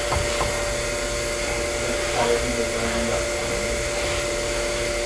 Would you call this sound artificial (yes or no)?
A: no